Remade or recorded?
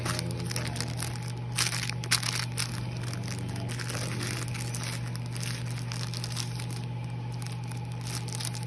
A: recorded